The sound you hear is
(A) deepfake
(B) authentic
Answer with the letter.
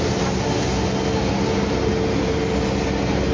B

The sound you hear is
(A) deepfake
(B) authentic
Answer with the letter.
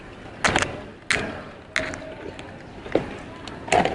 B